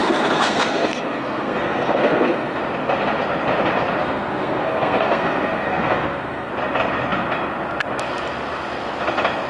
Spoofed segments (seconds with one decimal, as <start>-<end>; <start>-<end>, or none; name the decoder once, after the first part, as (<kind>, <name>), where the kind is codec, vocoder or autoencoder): 0.0-2.6 (codec, SNAC); 4.0-6.5